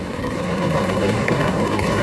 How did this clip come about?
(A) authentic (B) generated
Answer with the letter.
B